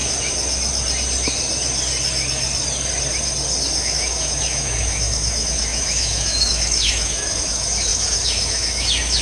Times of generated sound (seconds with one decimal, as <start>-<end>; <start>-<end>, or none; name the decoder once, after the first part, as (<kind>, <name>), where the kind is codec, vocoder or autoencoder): 3.8-9.2 (autoencoder, DAC-VAE)